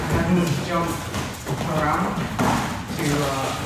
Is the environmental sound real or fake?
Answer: real